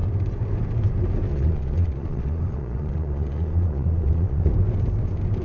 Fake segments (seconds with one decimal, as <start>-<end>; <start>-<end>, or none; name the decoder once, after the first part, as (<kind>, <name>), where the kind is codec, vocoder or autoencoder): 1.3-4.5 (vocoder, Vocos)